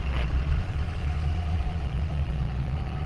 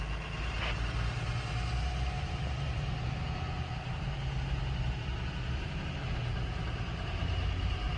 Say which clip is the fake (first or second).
first